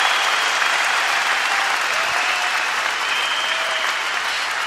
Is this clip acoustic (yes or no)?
no